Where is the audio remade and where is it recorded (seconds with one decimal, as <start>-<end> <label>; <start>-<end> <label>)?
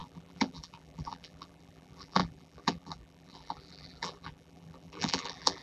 0.0-5.6 remade